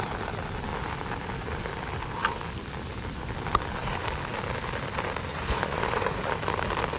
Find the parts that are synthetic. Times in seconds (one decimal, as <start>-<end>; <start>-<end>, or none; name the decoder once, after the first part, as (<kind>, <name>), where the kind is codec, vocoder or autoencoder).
5.3-6.3 (vocoder, Vocos)